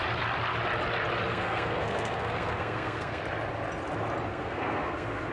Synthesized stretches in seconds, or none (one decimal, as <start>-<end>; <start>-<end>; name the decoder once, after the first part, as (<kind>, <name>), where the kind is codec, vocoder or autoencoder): 1.3-3.2 (codec, SNAC); 4.3-5.3